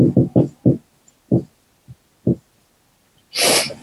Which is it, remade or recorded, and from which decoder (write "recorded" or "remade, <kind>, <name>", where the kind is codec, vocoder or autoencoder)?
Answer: recorded